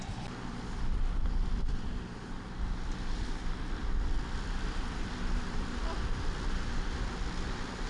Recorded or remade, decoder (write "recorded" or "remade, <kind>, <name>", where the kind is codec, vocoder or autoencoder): remade, vocoder, BigVGAN v2